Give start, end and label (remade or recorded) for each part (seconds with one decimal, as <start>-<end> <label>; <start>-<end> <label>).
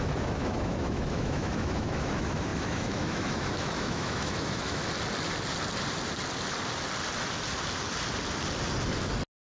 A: 0.0-4.8 remade; 4.8-9.4 recorded